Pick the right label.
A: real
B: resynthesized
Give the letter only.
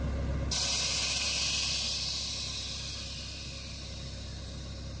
A